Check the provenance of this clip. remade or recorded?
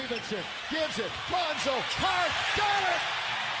recorded